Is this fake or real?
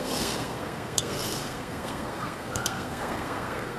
fake